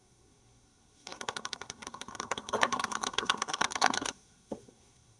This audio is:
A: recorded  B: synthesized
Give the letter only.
B